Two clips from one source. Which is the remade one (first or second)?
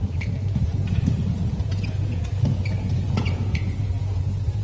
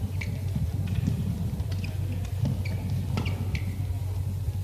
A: first